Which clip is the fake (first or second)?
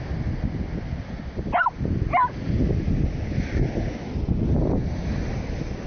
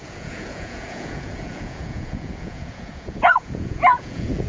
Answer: second